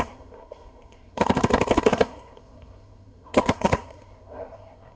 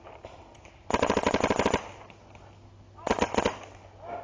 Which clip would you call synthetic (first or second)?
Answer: first